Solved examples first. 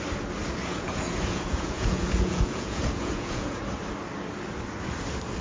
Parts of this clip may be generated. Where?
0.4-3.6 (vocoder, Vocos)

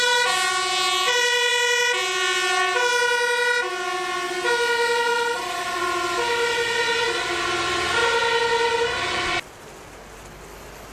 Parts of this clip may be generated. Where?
5.1-5.8 (vocoder, BigVGAN v2)

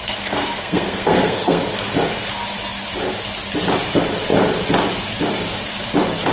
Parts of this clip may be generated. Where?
0.0-1.6 (codec, SNAC)

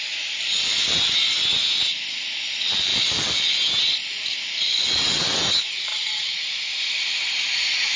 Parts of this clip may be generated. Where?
4.7-5.4 (vocoder, WaveNeXt); 5.9-6.4

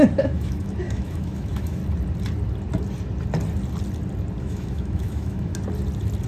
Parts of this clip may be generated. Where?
0.0-1.8 (autoencoder, DAC-VAE); 4.4-5.5

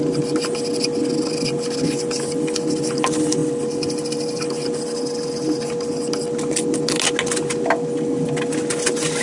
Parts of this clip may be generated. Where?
none

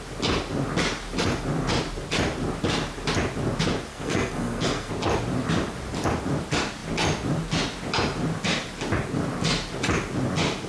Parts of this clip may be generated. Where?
3.9-4.9 (codec, SNAC)

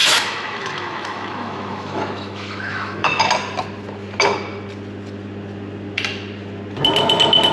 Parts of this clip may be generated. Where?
0.0-3.2 (autoencoder, DAC-VAE)